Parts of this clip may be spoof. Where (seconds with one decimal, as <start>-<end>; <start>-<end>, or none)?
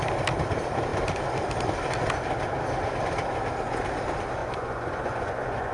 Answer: 4.4-5.7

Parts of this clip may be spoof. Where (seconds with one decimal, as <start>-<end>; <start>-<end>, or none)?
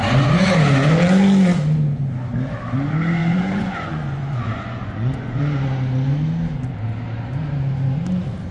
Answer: 3.2-5.4